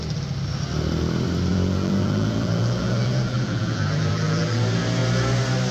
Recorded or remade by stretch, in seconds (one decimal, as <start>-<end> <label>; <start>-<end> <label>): 0.0-1.5 recorded; 1.5-4.6 remade; 4.6-5.7 recorded

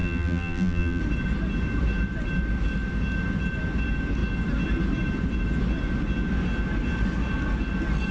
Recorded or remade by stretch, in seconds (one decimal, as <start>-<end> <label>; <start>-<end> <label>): 0.0-1.0 remade; 1.0-8.1 recorded

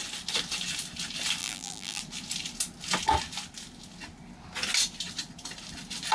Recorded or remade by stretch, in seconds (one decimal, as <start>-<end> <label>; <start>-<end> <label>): 0.0-1.4 recorded; 1.4-2.0 remade; 2.0-6.1 recorded

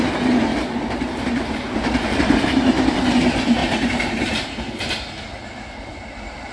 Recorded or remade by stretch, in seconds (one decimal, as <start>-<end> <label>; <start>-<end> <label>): 0.0-0.5 recorded; 0.5-3.1 remade; 3.1-3.6 recorded; 3.6-4.5 remade; 4.5-6.5 recorded

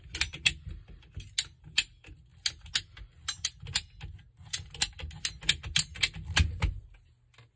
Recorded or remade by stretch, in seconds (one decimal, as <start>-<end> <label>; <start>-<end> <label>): 0.0-7.6 recorded

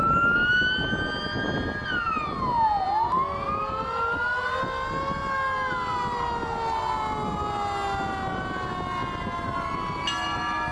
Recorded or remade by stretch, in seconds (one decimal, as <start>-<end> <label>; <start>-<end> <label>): 0.0-10.7 recorded

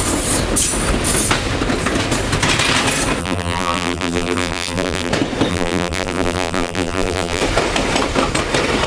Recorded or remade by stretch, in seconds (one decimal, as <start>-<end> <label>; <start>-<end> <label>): 0.0-3.2 recorded; 3.2-5.1 remade; 5.1-5.5 recorded; 5.5-7.4 remade; 7.4-8.9 recorded